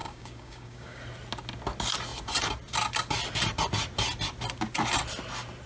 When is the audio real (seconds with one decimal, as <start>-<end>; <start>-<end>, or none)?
1.0-5.7